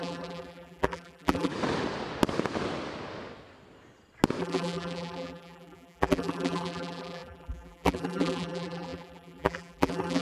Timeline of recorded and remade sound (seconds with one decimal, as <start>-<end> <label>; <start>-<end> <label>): 0.0-1.5 remade; 1.5-4.4 recorded; 4.4-10.2 remade